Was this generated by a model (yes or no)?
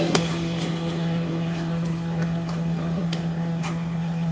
yes